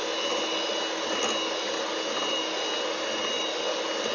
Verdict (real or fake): real